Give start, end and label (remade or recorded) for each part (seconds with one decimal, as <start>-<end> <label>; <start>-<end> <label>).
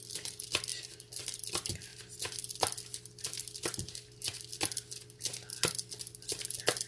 0.0-6.9 recorded